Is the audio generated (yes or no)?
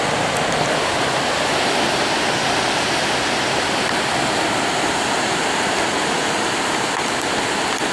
yes